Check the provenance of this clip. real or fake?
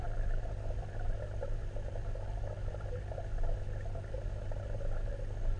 real